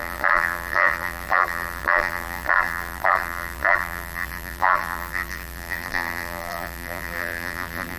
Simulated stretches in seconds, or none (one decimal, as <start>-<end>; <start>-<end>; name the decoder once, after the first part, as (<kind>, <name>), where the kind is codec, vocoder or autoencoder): 0.0-8.0 (vocoder, BigVGAN v2)